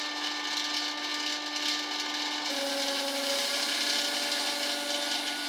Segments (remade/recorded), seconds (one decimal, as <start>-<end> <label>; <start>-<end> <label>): 0.0-5.5 recorded